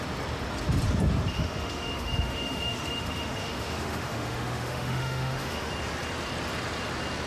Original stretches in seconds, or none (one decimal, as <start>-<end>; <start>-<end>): 0.0-1.3; 5.7-7.3